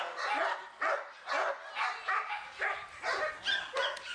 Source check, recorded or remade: recorded